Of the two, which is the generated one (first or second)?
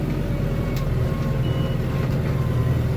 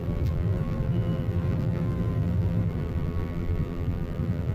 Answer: second